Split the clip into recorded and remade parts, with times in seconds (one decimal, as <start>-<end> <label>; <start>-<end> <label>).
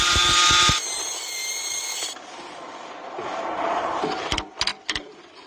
0.0-4.7 recorded; 4.7-5.5 remade